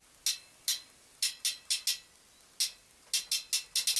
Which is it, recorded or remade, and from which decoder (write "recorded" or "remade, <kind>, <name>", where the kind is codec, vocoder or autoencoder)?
recorded